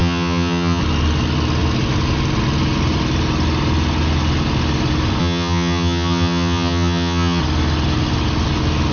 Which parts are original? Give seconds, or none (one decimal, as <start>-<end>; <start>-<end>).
0.8-5.2; 7.4-8.9